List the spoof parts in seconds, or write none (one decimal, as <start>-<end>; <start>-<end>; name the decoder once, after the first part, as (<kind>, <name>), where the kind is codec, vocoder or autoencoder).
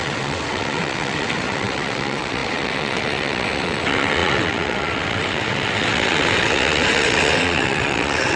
0.0-8.4 (vocoder, WaveNeXt)